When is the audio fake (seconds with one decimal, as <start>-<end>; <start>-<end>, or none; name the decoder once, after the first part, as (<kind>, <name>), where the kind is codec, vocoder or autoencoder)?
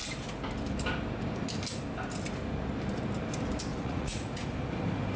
3.7-4.4 (vocoder, Vocos)